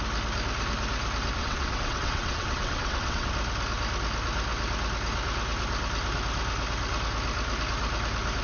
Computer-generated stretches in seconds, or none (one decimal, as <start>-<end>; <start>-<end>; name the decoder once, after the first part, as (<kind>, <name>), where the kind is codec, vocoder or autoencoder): 1.4-3.3 (vocoder, WaveNeXt)